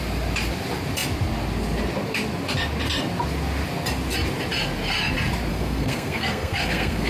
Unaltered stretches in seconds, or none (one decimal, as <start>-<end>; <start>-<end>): 0.0-5.5